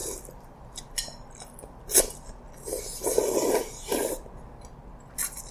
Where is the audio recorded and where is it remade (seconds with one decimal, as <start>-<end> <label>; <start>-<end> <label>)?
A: 0.0-5.5 recorded